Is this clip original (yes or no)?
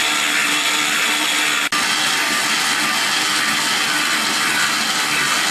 yes